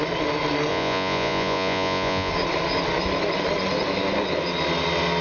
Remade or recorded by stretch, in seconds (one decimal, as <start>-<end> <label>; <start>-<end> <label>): 0.0-0.7 recorded; 0.7-2.3 remade; 2.3-5.2 recorded